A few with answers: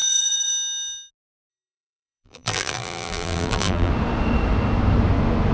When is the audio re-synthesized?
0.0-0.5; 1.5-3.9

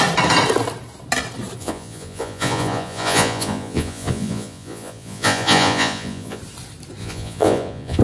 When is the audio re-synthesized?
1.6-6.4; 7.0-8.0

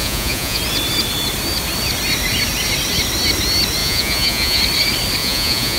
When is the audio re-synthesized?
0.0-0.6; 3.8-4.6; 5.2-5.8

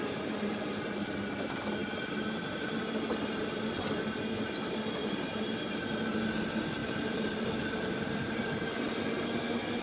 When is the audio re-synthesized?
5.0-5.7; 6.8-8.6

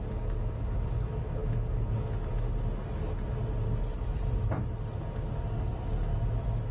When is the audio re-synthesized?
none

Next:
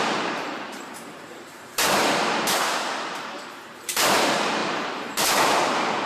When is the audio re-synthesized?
0.0-6.1